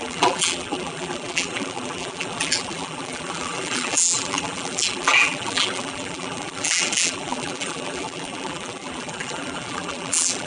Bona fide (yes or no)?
no